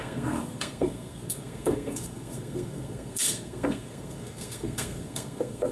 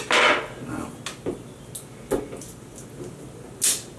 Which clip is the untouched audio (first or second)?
second